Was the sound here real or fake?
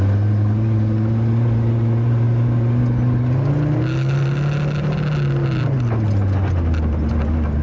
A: real